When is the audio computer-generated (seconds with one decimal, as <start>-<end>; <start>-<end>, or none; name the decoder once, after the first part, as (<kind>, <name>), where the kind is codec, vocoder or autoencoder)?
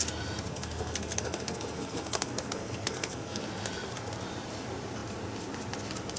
0.5-3.4 (codec, SNAC)